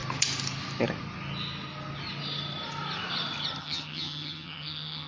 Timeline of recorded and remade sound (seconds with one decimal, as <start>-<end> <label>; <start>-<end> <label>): 0.0-3.6 recorded; 3.6-5.1 remade